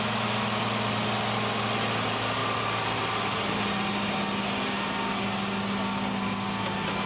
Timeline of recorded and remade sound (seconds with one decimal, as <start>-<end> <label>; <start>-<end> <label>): 0.0-7.1 recorded